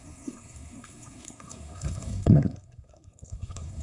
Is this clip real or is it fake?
fake